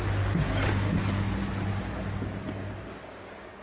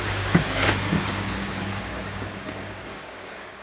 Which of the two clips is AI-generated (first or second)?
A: second